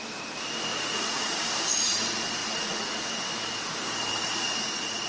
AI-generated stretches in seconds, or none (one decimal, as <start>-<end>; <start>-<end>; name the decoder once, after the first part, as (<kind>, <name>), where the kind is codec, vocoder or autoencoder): 0.7-1.3 (vocoder, Vocos); 2.4-3.1; 4.1-5.1